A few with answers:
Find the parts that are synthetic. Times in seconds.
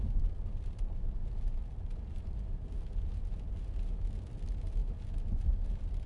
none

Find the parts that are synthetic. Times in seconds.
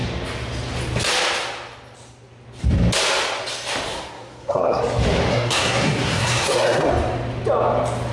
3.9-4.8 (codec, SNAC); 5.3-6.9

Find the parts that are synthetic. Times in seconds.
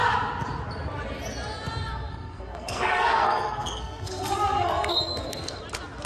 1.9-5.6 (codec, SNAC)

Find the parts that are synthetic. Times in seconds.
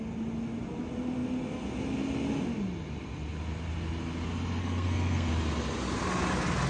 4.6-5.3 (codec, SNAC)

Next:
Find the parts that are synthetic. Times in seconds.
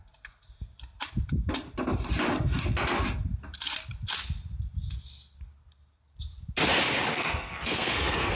7.1-8.3 (codec, SNAC)